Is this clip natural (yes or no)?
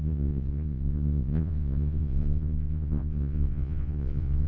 no